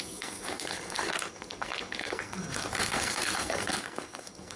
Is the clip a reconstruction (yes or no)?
yes